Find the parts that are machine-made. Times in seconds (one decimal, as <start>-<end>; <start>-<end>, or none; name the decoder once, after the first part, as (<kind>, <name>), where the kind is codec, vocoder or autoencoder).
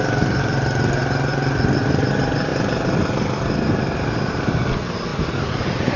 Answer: 1.3-2.1 (vocoder, BigVGAN v2)